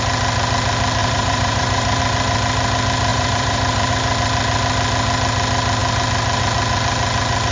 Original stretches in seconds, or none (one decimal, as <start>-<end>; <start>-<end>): 0.0-1.0; 2.0-3.1; 3.9-7.5